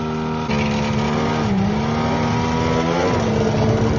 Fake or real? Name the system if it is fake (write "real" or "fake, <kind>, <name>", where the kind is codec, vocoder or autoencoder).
real